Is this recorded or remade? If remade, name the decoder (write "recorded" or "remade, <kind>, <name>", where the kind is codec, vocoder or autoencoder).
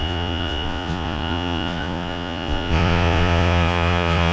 remade, vocoder, Vocos